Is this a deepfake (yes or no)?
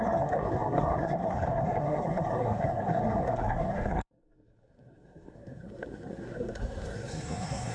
yes